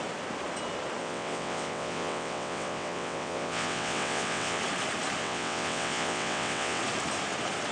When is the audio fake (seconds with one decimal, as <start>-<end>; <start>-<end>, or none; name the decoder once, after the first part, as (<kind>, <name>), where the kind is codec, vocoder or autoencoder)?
1.0-4.6 (vocoder, WaveNeXt); 5.2-6.8